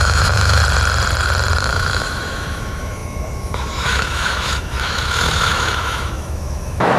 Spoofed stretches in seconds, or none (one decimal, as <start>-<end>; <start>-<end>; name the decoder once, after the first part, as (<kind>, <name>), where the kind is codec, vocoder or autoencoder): 0.0-0.6 (autoencoder, DAC-VAE); 1.6-7.0